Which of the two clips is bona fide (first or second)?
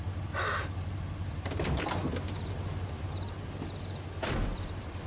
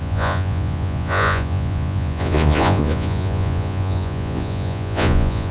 first